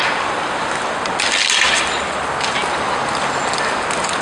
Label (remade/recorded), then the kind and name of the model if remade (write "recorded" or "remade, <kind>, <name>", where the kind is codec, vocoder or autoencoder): recorded